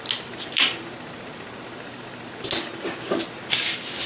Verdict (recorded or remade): recorded